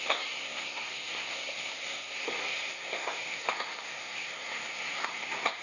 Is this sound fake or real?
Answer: fake